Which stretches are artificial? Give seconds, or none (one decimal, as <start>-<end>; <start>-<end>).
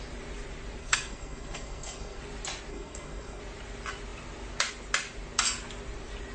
0.8-2.2; 2.7-3.4